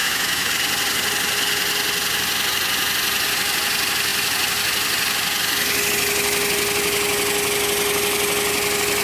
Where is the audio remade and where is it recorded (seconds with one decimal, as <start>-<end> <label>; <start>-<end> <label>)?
0.0-0.5 remade; 0.5-9.0 recorded